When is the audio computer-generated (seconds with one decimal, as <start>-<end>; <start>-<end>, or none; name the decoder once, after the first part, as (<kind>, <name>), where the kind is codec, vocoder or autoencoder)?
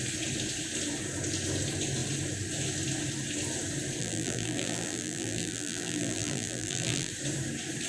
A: 4.0-7.1 (vocoder, BigVGAN v2)